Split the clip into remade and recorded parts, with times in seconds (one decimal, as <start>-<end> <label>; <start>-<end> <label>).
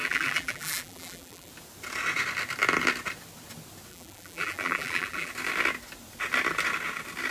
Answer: 0.0-1.5 remade; 1.5-3.9 recorded; 3.9-5.3 remade; 5.3-7.3 recorded